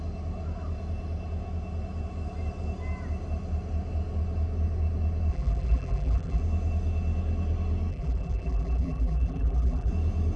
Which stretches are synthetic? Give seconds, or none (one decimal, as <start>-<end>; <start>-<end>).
5.3-6.4; 7.9-9.9